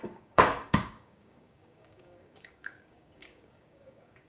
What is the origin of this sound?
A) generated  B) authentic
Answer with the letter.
A